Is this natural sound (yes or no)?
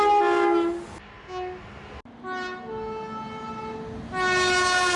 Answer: yes